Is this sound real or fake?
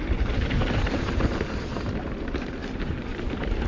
fake